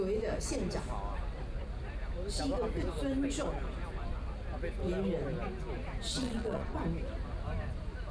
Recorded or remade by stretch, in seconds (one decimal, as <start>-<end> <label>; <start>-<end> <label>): 0.0-6.2 recorded; 6.2-6.8 remade; 6.8-8.1 recorded